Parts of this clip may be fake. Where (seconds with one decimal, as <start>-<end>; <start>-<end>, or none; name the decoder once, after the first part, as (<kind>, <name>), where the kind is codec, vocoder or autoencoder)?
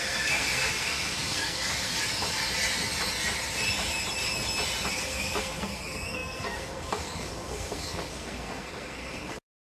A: 0.0-1.9 (codec, SNAC); 4.9-9.6